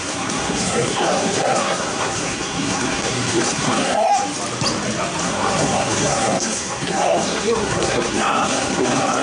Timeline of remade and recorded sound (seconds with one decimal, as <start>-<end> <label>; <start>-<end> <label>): 0.0-4.1 remade; 4.1-5.2 recorded; 5.2-9.2 remade